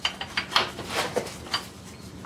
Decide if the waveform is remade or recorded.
remade